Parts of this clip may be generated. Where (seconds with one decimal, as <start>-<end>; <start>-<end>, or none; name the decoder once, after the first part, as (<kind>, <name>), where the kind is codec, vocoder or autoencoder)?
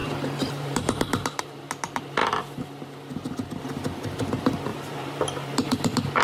0.0-1.4 (vocoder, BigVGAN v2); 4.7-5.5